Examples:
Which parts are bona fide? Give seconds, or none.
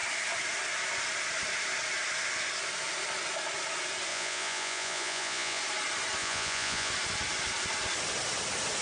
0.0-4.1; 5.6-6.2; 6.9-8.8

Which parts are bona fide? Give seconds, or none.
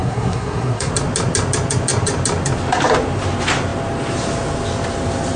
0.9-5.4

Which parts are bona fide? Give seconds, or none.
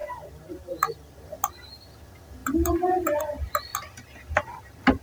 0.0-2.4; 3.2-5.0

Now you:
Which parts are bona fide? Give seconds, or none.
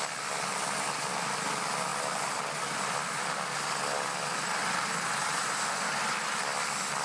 0.0-7.0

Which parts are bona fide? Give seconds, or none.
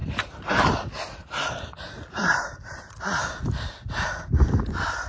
1.7-5.1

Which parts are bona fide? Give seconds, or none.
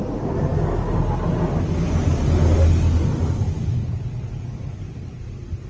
0.0-5.7